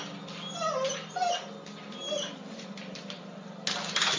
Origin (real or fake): real